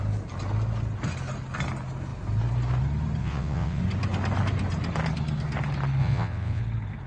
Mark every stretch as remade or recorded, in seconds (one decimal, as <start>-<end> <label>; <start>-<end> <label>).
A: 0.0-3.2 recorded; 3.2-3.8 remade; 3.8-6.0 recorded; 6.0-6.6 remade; 6.6-7.1 recorded